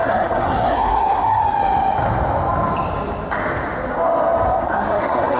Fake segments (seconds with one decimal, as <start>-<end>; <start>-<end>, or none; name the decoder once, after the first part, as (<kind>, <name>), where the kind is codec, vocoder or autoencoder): 0.0-1.4 (codec, SNAC); 4.6-5.4